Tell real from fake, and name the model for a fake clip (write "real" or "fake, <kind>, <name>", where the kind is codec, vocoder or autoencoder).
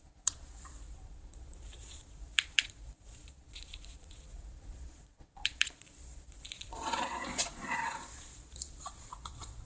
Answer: fake, vocoder, Vocos